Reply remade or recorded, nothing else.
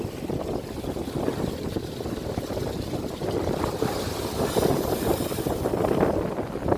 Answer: recorded